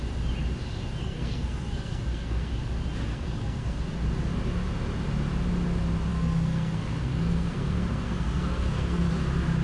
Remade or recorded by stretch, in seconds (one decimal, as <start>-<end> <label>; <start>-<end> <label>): 0.0-1.0 recorded; 1.0-2.5 remade; 2.5-3.1 recorded; 3.1-3.8 remade; 3.8-6.1 recorded; 6.1-9.1 remade; 9.1-9.6 recorded